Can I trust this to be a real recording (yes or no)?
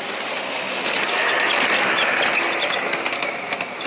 yes